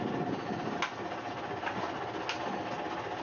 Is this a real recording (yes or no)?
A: yes